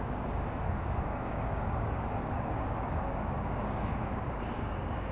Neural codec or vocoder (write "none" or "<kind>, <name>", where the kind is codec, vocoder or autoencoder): codec, DAC